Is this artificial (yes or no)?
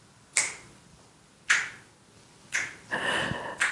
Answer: no